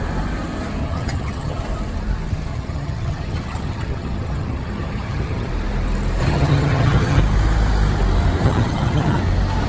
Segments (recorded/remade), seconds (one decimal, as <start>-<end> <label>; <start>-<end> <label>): 0.0-0.8 recorded; 0.8-1.6 remade; 1.6-2.5 recorded; 2.5-5.5 remade; 5.5-6.2 recorded; 6.2-7.2 remade; 7.2-8.4 recorded; 8.4-9.2 remade; 9.2-9.7 recorded